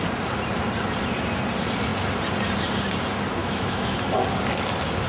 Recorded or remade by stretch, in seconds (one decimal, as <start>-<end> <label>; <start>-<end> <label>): 0.0-3.4 recorded; 3.4-4.0 remade; 4.0-5.1 recorded